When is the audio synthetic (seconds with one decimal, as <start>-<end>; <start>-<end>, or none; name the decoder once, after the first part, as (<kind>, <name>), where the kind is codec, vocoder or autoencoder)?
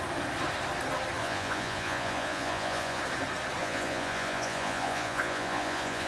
1.2-3.0 (vocoder, Vocos); 3.6-6.1